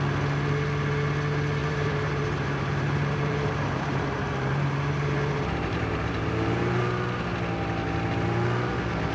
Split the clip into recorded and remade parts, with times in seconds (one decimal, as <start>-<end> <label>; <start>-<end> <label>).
0.0-1.6 recorded; 1.6-6.8 remade; 6.8-9.1 recorded